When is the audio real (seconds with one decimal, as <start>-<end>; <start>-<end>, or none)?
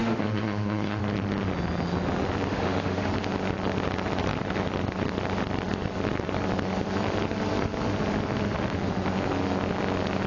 1.0-2.5; 3.1-10.3